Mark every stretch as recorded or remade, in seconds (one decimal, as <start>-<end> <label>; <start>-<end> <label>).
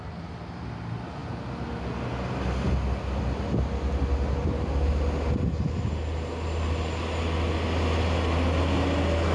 0.0-9.3 recorded